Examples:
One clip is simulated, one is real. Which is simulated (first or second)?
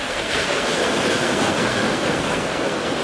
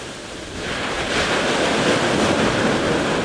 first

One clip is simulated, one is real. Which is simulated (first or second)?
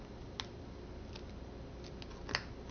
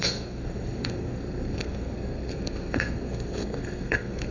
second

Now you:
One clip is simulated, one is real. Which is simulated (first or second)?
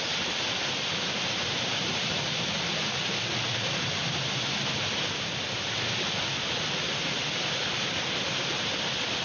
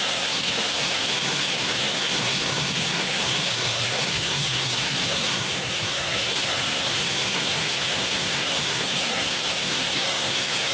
second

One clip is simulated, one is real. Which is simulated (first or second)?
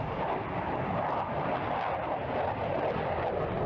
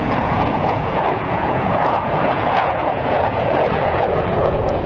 second